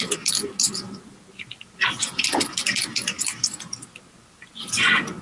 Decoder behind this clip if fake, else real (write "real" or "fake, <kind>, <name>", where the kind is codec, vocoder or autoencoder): real